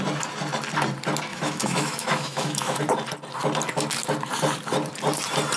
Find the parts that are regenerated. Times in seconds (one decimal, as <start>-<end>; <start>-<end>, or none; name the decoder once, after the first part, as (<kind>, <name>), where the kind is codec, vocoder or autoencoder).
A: 1.3-2.8 (autoencoder, DAC-VAE)